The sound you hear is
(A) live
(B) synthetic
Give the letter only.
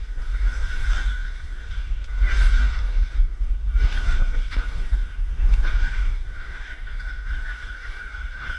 B